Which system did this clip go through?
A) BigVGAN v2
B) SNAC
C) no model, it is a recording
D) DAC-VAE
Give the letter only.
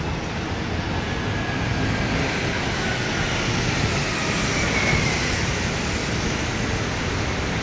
C